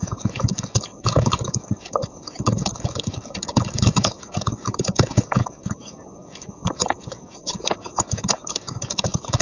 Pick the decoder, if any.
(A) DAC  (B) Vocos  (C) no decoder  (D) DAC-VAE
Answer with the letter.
A